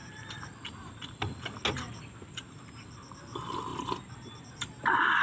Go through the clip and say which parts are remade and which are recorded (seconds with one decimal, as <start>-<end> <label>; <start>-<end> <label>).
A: 0.0-5.2 recorded